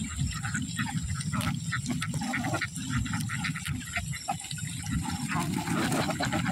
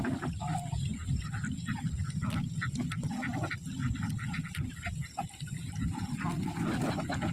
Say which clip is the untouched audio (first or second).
first